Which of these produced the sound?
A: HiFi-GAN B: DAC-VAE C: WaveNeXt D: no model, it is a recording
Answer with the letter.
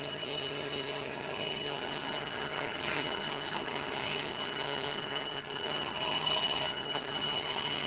A